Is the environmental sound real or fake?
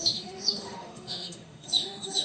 fake